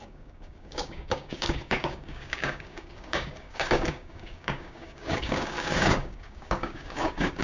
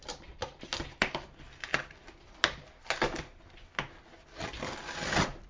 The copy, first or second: first